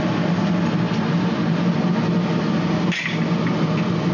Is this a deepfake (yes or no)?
no